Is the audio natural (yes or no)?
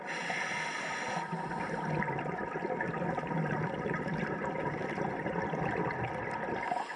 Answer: yes